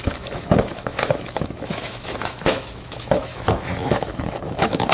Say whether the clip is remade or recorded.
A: remade